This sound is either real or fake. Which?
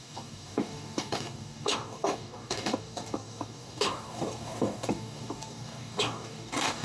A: fake